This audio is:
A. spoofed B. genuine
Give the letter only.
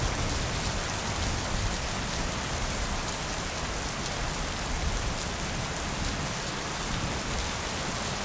B